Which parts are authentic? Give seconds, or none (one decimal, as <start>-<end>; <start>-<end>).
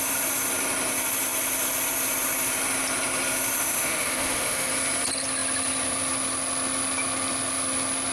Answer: 0.0-3.6; 4.7-8.1